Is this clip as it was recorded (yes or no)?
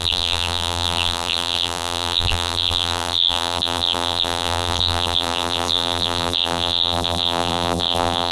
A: no